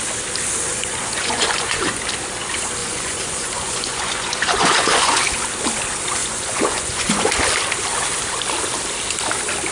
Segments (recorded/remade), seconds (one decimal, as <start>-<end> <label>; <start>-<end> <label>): 0.0-0.7 recorded; 0.7-2.0 remade; 2.0-2.8 recorded; 2.8-5.2 remade; 5.2-6.2 recorded; 6.2-7.3 remade; 7.3-9.7 recorded